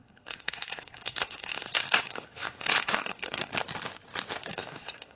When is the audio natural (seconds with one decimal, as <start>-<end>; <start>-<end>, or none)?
3.5-4.5